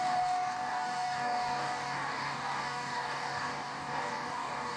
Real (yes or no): no